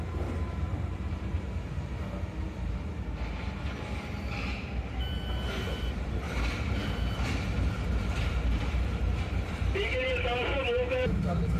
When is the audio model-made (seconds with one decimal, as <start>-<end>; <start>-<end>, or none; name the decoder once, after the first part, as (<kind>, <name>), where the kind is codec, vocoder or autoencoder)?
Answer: 0.0-2.0 (vocoder, BigVGAN v2); 5.5-6.8; 7.7-11.6